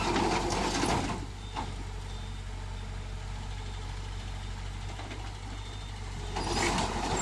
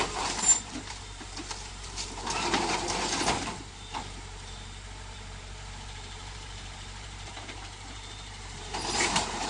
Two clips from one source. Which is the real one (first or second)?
first